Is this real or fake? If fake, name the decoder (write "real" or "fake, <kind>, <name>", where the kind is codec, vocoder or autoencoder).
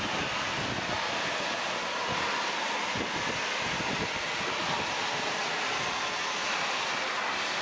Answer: real